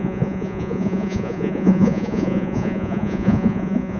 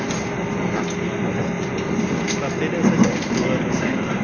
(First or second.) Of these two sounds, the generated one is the first